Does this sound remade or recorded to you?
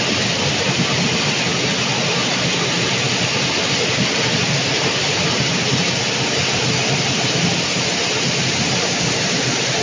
recorded